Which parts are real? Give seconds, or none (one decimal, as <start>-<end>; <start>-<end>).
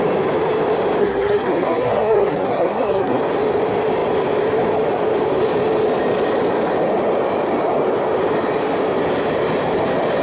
0.0-1.0; 3.2-10.2